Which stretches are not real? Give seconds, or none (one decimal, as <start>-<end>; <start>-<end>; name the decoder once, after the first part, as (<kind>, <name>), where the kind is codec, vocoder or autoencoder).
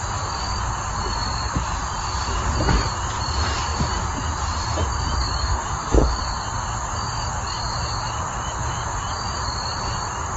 5.4-6.2 (autoencoder, DAC-VAE)